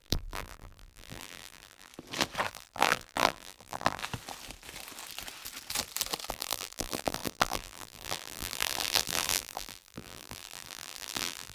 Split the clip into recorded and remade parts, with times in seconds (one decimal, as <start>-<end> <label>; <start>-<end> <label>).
0.0-1.9 remade; 1.9-2.5 recorded; 2.5-4.0 remade; 4.0-6.3 recorded; 6.3-11.5 remade